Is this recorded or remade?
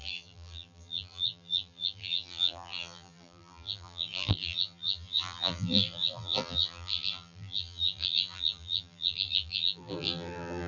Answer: remade